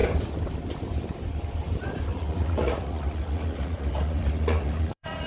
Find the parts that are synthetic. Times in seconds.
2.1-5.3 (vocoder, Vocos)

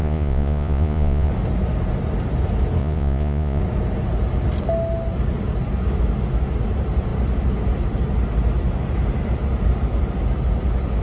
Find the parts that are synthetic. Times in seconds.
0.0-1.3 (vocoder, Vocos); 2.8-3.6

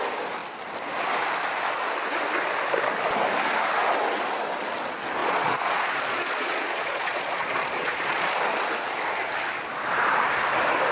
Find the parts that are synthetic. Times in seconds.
5.2-8.4 (vocoder, Vocos)

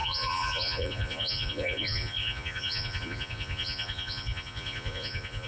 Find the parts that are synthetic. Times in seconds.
0.0-5.5 (vocoder, Vocos)

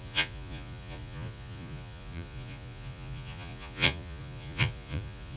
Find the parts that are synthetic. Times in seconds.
0.0-5.4 (vocoder, Vocos)